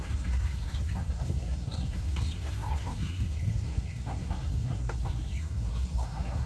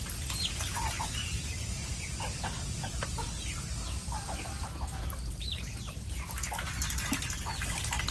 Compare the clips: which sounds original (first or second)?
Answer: second